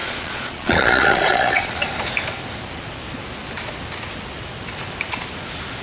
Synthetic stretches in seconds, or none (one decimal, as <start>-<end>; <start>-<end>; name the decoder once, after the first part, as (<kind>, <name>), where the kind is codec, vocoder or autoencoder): 0.0-1.8 (vocoder, Vocos)